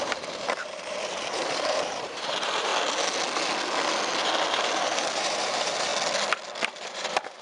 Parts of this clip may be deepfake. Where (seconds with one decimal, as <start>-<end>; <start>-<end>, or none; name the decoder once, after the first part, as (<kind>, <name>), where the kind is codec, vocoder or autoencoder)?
0.0-2.7 (vocoder, BigVGAN v2); 4.6-5.9; 6.7-7.4